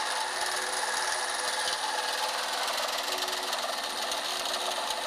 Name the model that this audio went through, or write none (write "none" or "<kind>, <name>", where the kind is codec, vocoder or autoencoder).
none